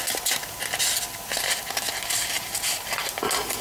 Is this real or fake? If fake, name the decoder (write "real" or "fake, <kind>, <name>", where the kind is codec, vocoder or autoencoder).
real